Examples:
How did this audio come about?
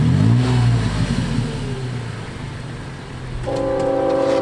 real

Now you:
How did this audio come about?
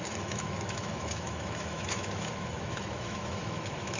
fake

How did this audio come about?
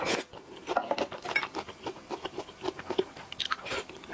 real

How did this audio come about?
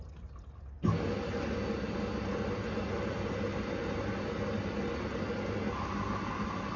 real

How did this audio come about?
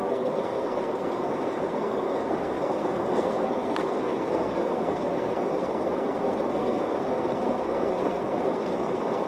fake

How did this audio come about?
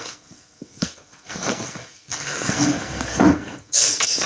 fake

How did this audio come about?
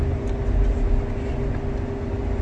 real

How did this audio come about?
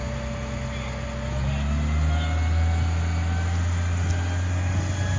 real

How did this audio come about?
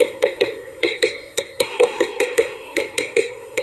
fake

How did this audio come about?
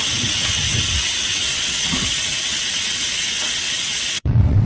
fake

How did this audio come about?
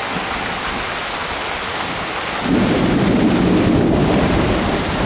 real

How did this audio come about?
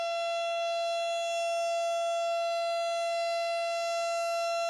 real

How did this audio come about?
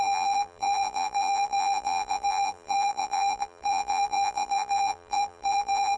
fake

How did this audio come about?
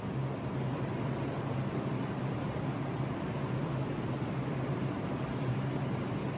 fake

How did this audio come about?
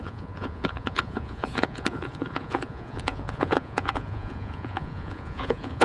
fake